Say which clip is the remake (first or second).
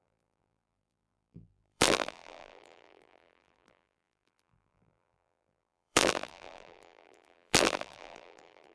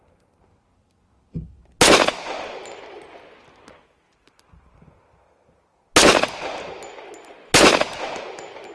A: first